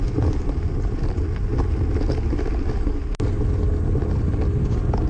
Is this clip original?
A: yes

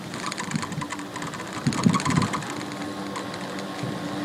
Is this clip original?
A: yes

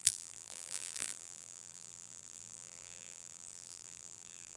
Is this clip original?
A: no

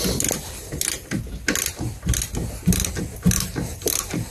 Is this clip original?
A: yes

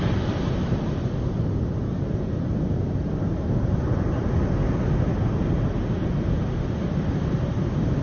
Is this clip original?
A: yes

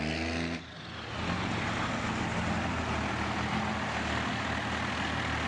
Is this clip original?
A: yes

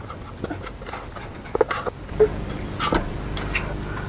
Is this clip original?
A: yes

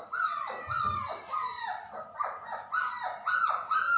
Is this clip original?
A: yes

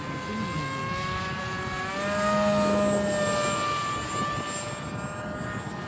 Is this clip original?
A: yes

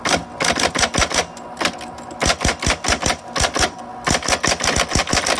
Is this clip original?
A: yes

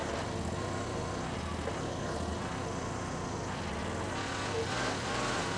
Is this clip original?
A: yes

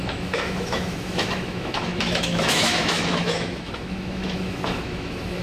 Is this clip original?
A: no